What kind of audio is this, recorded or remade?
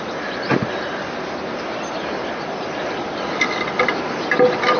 recorded